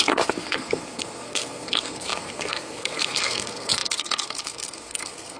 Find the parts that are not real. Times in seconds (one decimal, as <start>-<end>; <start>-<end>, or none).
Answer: 0.0-5.4